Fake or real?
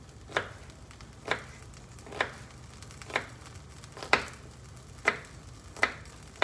real